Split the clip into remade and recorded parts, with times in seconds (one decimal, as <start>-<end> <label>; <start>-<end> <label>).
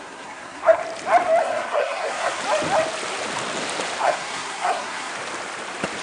0.0-0.8 remade; 0.8-1.4 recorded; 1.4-2.4 remade; 2.4-4.0 recorded; 4.0-5.1 remade; 5.1-6.0 recorded